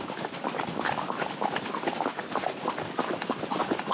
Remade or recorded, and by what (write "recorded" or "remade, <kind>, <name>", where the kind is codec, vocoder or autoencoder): recorded